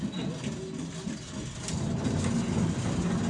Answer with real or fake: real